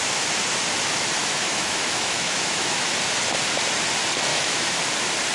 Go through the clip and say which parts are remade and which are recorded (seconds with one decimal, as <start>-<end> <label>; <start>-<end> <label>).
0.0-1.2 recorded; 1.2-2.9 remade; 2.9-4.3 recorded; 4.3-4.8 remade; 4.8-5.3 recorded